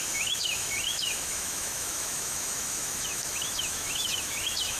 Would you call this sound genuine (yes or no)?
no